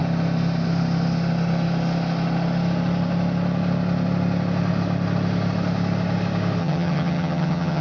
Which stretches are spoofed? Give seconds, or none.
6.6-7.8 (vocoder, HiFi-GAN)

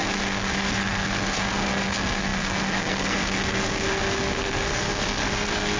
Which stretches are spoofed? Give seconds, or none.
0.0-5.8 (codec, SNAC)

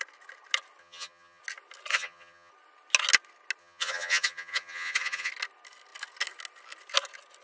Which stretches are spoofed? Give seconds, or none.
0.8-1.4 (vocoder, HiFi-GAN); 1.9-2.5; 3.6-5.3

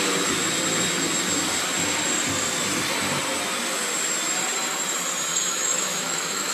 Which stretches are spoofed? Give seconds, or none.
5.3-6.5 (autoencoder, DAC-VAE)

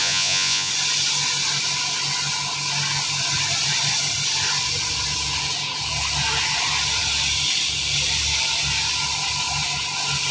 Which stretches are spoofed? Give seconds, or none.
0.0-0.7 (vocoder, Vocos)

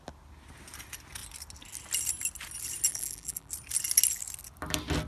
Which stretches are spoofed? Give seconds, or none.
2.9-3.5 (vocoder, BigVGAN v2)

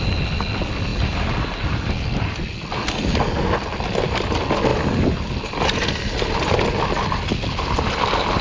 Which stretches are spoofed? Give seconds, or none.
none

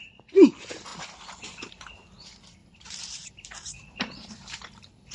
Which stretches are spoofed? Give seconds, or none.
2.6-4.3 (vocoder, BigVGAN v2)